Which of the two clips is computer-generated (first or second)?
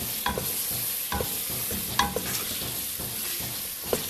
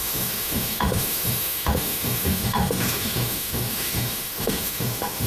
second